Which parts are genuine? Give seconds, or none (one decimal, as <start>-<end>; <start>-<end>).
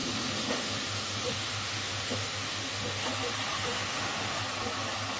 3.1-3.5; 4.4-5.2